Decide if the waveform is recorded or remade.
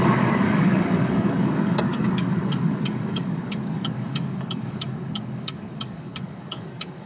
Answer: remade